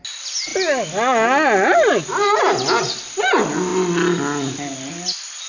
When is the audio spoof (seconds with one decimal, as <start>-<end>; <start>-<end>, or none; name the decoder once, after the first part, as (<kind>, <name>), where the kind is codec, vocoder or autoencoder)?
none